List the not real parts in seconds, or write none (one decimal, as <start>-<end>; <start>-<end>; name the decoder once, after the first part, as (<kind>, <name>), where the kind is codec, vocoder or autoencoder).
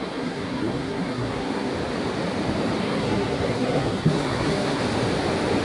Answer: 0.0-1.7 (codec, SNAC); 2.8-4.8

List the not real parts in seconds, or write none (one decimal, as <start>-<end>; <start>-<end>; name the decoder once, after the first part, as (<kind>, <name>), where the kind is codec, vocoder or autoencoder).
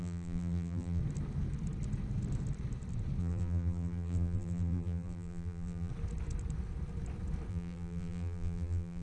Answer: 0.0-1.0 (vocoder, BigVGAN v2); 3.2-5.9; 7.5-9.0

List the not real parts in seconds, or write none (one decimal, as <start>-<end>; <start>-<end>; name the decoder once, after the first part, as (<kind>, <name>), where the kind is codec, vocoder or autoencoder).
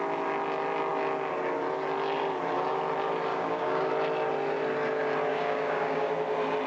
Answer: 3.3-3.9 (codec, DAC); 5.3-6.1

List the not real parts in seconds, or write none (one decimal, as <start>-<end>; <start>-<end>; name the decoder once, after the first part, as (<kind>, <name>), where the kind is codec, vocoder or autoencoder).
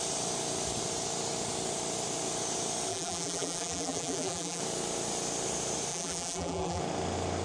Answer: 2.9-4.6 (vocoder, BigVGAN v2); 5.9-6.8